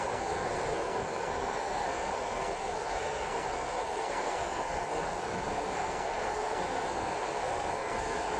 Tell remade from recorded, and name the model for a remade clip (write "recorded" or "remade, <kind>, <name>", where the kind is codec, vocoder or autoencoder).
remade, codec, SNAC